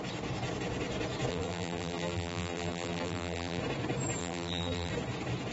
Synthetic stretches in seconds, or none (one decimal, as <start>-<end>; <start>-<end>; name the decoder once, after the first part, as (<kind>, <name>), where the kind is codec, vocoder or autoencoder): 1.3-3.6 (vocoder, BigVGAN v2); 4.2-4.9